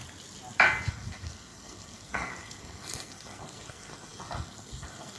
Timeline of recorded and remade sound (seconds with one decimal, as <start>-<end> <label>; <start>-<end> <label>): 0.0-0.9 recorded; 0.9-5.2 remade

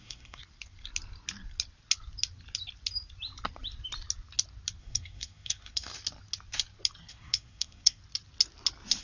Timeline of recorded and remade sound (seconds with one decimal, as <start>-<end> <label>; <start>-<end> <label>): 0.0-0.4 remade; 0.4-4.8 recorded; 4.8-5.9 remade; 5.9-7.1 recorded; 7.1-8.0 remade; 8.0-9.0 recorded

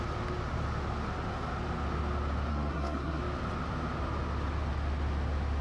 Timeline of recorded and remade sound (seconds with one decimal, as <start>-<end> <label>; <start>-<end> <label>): 0.0-2.5 recorded; 2.5-3.2 remade; 3.2-5.6 recorded

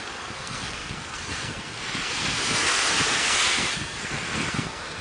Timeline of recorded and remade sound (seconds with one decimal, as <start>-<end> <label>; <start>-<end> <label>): 0.0-5.0 remade

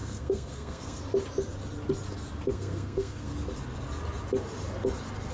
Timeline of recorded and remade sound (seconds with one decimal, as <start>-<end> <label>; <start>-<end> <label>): 0.0-1.0 remade; 1.0-2.5 recorded; 2.5-3.3 remade; 3.3-5.3 recorded

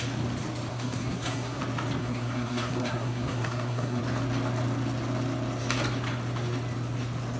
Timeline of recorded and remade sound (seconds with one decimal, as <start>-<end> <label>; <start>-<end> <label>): 0.0-0.7 recorded; 0.7-1.6 remade; 1.6-2.0 recorded; 2.0-4.0 remade; 4.0-7.4 recorded